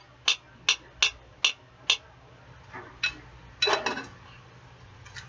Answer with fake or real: real